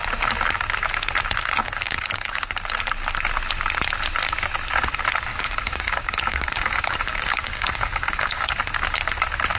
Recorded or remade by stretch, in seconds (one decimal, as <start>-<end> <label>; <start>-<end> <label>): 0.0-1.6 recorded; 1.6-2.5 remade; 2.5-5.3 recorded; 5.3-8.5 remade; 8.5-9.6 recorded